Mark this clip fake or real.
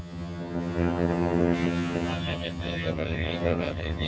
fake